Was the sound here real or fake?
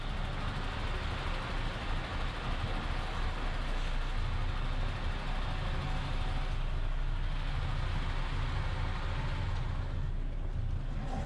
real